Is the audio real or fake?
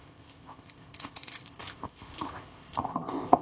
fake